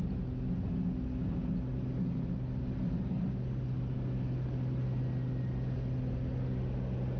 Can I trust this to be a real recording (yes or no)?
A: yes